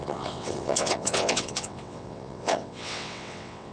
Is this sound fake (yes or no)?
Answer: yes